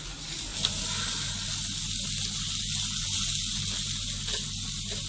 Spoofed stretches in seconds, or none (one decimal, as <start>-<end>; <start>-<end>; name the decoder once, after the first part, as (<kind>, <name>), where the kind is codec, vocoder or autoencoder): none